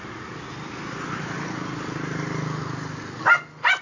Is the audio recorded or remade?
recorded